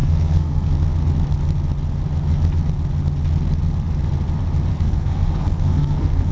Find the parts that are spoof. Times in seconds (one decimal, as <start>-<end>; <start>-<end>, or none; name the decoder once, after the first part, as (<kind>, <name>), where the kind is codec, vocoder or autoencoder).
0.0-0.7 (codec, SNAC); 4.7-6.3